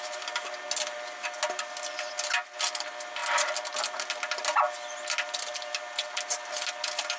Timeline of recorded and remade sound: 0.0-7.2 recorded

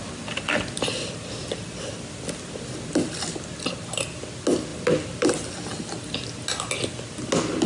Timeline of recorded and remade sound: 0.0-7.7 recorded

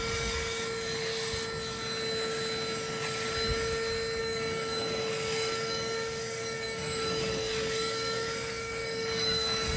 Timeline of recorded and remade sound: 0.0-1.1 remade; 1.1-4.2 recorded; 4.2-9.8 remade

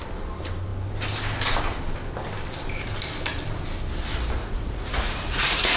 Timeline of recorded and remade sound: 0.0-4.4 recorded; 4.4-5.8 remade

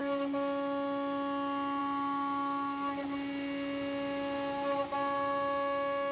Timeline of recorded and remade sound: 0.0-6.1 recorded